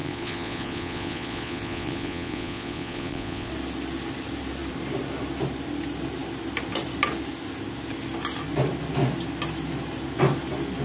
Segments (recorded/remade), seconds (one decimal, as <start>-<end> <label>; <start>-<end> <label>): 0.0-3.5 remade; 3.5-10.8 recorded